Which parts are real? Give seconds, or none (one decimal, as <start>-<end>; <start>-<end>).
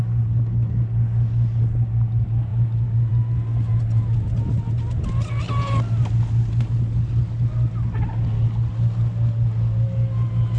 0.0-10.6